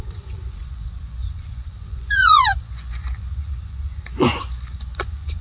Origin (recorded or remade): remade